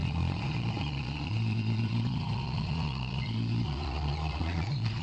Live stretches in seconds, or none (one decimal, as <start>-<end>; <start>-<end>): none